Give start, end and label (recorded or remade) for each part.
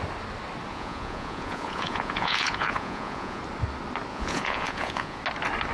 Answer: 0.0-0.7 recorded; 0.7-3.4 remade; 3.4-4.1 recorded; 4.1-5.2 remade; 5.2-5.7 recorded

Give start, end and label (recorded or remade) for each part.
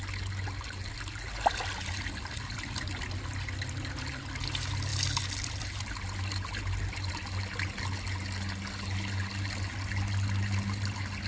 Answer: 0.0-11.3 recorded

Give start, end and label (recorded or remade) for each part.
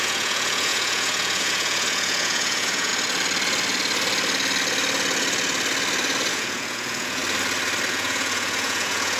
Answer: 0.0-2.9 remade; 2.9-6.3 recorded; 6.3-7.2 remade; 7.2-7.9 recorded; 7.9-9.2 remade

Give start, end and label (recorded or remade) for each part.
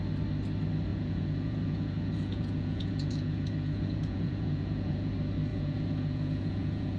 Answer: 0.0-0.9 recorded; 0.9-5.1 remade; 5.1-5.5 recorded; 5.5-7.0 remade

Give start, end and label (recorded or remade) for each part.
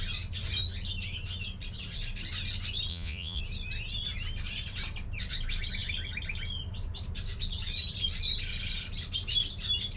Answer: 0.0-2.9 recorded; 2.9-3.4 remade; 3.4-10.0 recorded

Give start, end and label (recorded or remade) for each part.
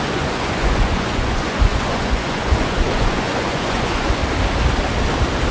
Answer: 0.0-4.2 remade; 4.2-5.5 recorded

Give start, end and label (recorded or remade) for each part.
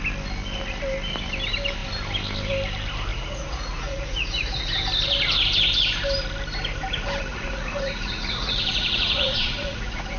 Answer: 0.0-3.1 recorded; 3.1-4.7 remade; 4.7-7.3 recorded; 7.3-10.2 remade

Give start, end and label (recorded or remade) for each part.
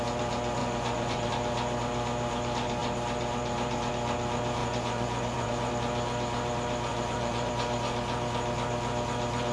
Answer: 0.0-0.6 recorded; 0.6-1.3 remade; 1.3-4.6 recorded; 4.6-5.7 remade; 5.7-6.9 recorded; 6.9-7.5 remade; 7.5-9.5 recorded